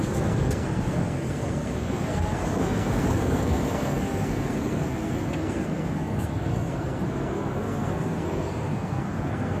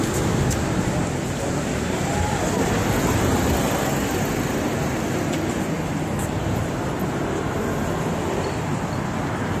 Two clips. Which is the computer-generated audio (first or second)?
first